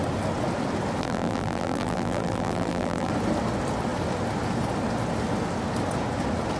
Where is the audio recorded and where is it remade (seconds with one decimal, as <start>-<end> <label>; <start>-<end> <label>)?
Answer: 0.0-1.0 recorded; 1.0-3.1 remade; 3.1-6.6 recorded